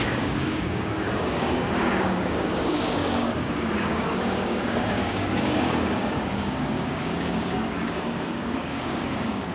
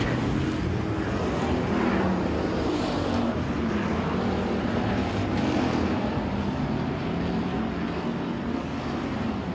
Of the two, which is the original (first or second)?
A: second